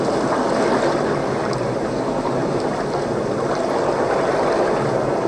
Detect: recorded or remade recorded